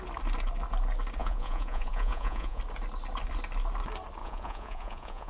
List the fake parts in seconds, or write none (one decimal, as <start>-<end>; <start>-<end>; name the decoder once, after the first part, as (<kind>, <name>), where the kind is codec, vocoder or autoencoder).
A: 1.2-2.6 (vocoder, Vocos); 4.2-5.3